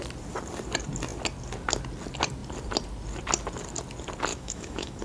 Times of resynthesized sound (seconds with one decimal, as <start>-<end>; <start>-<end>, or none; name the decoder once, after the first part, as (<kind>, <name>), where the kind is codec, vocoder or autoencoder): 4.3-5.0 (autoencoder, DAC-VAE)